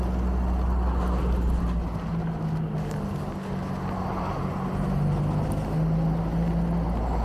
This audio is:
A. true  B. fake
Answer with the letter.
A